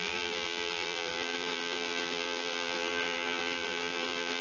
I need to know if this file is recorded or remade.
remade